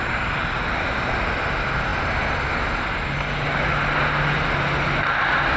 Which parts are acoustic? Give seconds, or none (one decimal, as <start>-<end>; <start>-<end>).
0.0-5.6